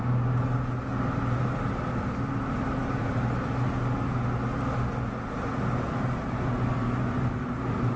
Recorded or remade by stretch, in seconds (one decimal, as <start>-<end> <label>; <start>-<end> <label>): 0.0-8.0 recorded